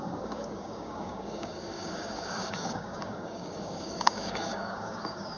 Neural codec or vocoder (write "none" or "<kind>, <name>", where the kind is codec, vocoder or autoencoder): codec, DAC